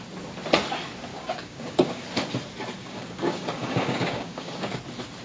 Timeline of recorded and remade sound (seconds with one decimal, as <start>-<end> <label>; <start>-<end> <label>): 0.0-1.1 recorded; 1.1-2.0 remade; 2.0-2.8 recorded; 2.8-4.8 remade; 4.8-5.2 recorded